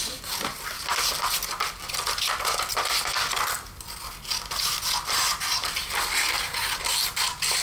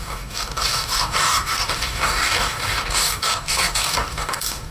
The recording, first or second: first